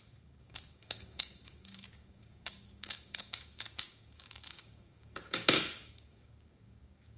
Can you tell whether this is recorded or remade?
remade